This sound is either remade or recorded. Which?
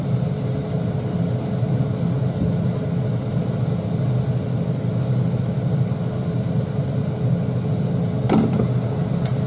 recorded